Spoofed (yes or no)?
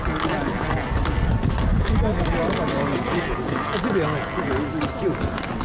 no